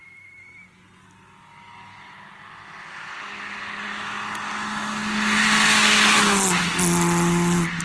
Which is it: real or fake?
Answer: real